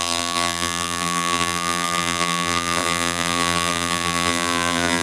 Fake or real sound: fake